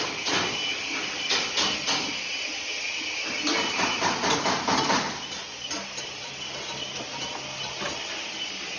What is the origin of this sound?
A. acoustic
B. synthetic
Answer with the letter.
A